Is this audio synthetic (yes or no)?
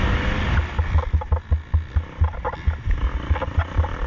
no